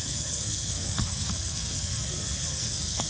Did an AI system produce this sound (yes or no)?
yes